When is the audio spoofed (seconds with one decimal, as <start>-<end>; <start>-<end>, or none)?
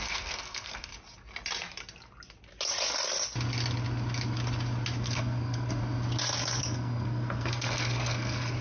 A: 0.0-0.9; 5.0-5.8; 6.6-8.6